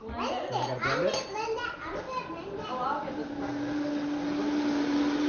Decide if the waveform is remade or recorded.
recorded